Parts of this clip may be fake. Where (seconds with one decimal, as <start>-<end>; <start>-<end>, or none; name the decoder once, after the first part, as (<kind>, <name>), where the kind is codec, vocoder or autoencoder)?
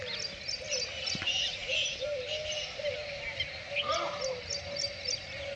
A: none